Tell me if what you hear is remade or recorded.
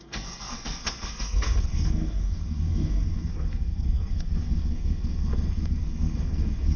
remade